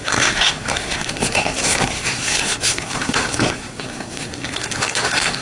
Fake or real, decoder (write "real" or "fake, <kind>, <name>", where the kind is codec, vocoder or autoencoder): fake, codec, SNAC